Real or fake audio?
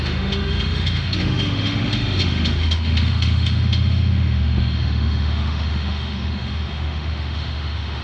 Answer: fake